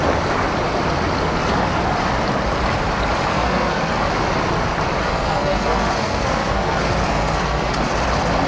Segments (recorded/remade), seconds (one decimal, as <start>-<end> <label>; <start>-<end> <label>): 0.0-3.3 recorded; 3.3-3.9 remade; 3.9-5.0 recorded; 5.0-7.7 remade; 7.7-8.5 recorded